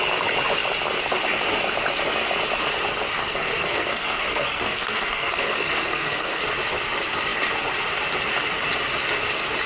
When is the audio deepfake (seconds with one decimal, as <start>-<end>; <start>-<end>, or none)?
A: 3.2-6.4